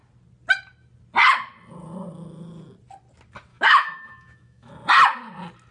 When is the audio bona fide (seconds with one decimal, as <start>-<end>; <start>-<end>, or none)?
0.0-3.5; 4.7-5.7